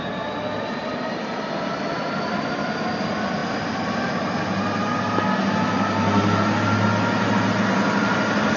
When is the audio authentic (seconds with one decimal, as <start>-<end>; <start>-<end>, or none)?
0.0-8.6